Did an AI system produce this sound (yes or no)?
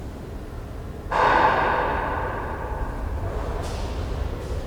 no